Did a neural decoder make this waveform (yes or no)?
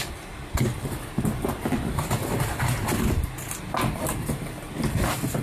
no